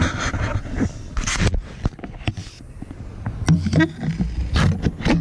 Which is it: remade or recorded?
recorded